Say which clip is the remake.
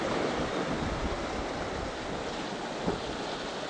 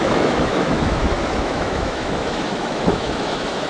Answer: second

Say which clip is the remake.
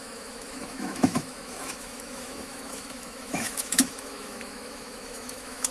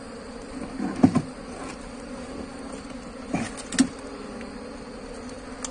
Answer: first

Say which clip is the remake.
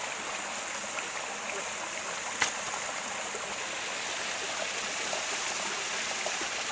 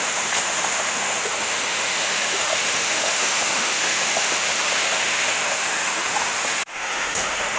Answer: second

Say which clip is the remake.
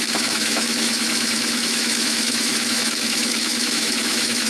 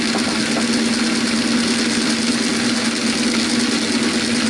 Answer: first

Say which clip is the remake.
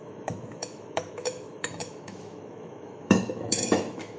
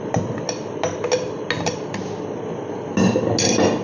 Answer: first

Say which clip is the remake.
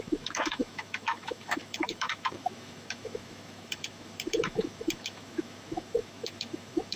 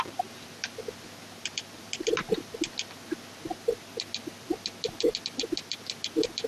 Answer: first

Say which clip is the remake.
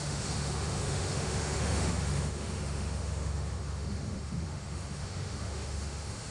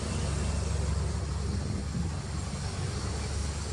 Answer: first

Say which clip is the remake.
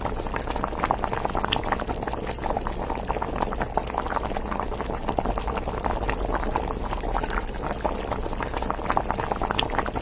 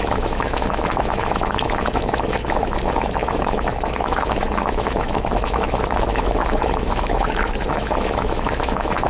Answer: second